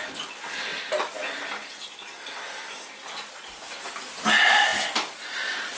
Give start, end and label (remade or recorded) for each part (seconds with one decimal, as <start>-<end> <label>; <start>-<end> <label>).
0.0-0.7 remade; 0.7-3.7 recorded; 3.7-4.7 remade; 4.7-5.8 recorded